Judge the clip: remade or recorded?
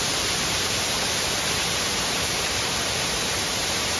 remade